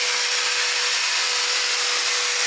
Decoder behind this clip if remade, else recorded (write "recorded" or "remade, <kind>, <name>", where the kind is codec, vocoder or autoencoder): recorded